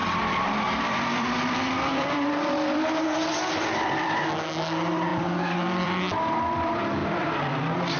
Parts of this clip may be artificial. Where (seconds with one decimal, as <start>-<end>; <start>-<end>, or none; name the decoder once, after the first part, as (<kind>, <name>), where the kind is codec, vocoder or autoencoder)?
0.0-4.2 (vocoder, BigVGAN v2); 5.1-6.0; 7.0-8.0

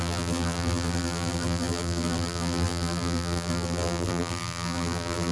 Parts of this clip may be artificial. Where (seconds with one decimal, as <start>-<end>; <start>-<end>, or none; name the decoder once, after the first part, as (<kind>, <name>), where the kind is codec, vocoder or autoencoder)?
0.0-5.3 (vocoder, BigVGAN v2)

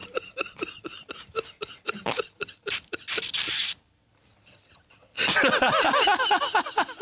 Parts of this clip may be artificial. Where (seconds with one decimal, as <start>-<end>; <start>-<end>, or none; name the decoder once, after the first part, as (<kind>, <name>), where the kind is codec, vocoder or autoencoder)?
none

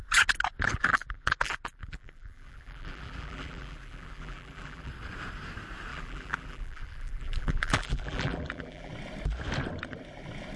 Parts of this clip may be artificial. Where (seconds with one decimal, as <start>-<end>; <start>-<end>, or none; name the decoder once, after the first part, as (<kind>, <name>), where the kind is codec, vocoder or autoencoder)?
0.7-4.9 (vocoder, BigVGAN v2); 5.9-8.9

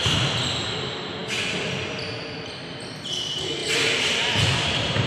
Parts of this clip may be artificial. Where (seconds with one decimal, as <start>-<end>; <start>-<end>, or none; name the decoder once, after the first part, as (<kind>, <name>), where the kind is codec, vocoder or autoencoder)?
3.6-5.1 (vocoder, BigVGAN v2)

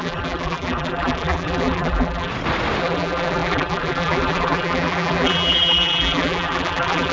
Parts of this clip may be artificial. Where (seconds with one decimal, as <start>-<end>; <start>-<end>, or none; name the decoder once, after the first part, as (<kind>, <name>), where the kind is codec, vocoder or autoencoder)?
0.0-2.3 (vocoder, BigVGAN v2); 2.8-7.1

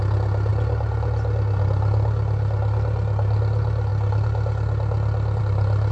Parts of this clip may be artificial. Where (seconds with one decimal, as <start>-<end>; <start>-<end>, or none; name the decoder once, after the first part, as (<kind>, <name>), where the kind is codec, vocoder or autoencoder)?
none

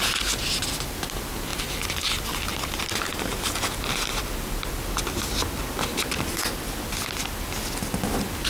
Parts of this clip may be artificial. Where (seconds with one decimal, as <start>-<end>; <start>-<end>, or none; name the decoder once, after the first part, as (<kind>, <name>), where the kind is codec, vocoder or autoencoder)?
3.1-4.2 (vocoder, BigVGAN v2)